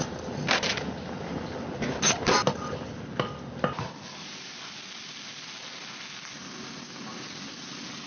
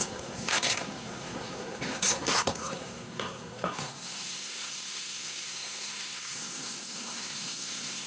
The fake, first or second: second